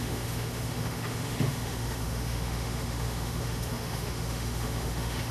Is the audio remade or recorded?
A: remade